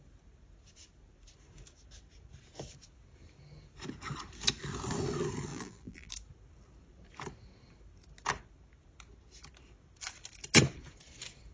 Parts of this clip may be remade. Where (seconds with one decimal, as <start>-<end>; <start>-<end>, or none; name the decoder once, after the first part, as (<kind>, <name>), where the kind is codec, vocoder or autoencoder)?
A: 5.5-6.1 (vocoder, BigVGAN v2)